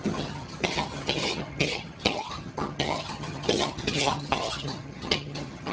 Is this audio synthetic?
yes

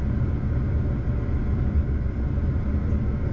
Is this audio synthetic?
no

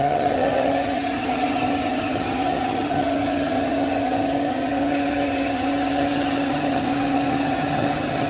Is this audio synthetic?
yes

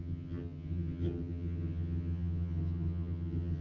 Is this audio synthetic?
yes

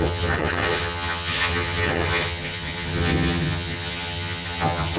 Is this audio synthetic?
yes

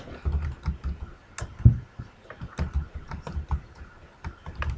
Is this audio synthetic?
no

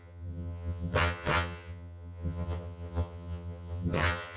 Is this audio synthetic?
yes